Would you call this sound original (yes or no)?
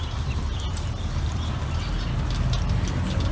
yes